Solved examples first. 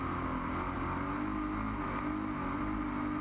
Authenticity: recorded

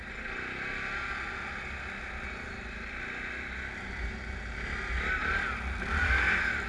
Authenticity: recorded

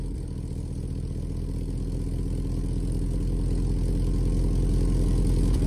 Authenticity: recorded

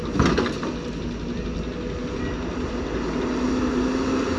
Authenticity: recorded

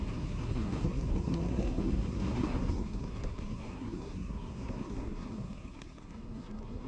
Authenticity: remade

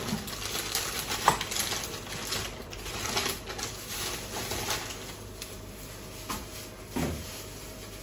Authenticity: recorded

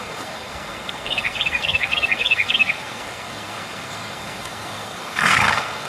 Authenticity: remade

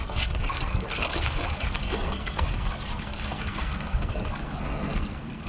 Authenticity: remade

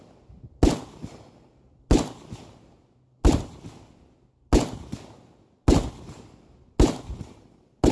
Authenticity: recorded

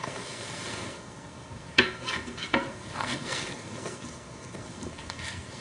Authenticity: remade